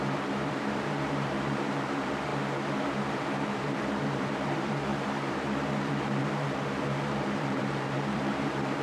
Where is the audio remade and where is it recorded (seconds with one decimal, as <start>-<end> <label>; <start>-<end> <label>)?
0.0-2.3 remade; 2.3-3.1 recorded; 3.1-8.8 remade